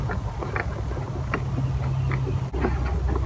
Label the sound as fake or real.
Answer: real